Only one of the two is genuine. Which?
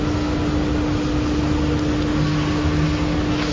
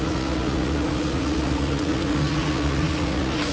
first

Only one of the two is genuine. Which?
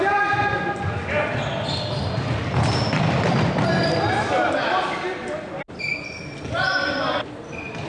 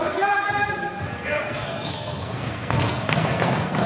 first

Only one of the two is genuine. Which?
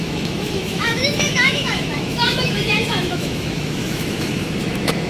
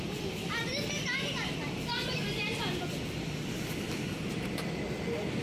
second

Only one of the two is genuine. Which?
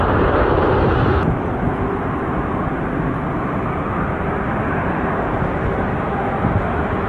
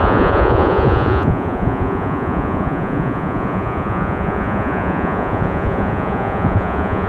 first